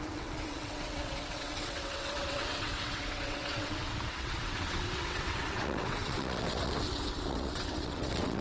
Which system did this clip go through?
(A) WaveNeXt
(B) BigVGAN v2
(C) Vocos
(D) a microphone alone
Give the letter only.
A